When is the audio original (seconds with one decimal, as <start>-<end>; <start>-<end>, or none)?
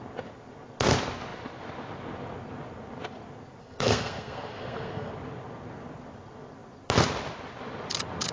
0.0-3.6; 5.1-8.3